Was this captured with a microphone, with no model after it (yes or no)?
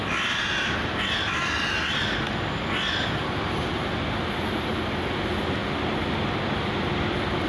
yes